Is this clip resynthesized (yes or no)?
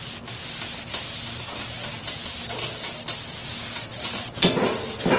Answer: no